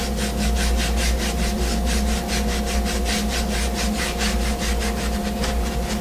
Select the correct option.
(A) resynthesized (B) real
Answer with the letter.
B